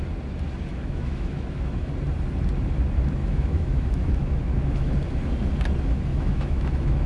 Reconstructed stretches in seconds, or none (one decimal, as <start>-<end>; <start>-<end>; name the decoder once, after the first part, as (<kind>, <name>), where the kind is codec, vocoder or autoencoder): 0.7-1.9 (autoencoder, DAC-VAE); 3.2-4.9; 6.1-7.1